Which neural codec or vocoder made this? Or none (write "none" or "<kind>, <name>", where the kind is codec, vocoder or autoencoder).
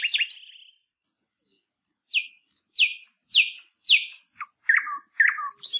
none